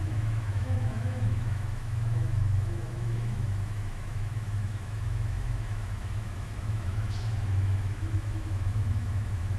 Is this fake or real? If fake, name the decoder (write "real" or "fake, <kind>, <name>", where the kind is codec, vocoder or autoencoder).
fake, autoencoder, DAC-VAE